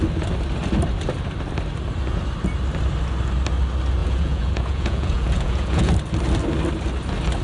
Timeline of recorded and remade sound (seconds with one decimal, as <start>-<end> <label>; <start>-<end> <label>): 0.0-4.0 recorded; 4.0-5.9 remade; 5.9-7.4 recorded